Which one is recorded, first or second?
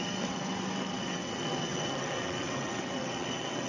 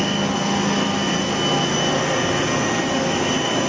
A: second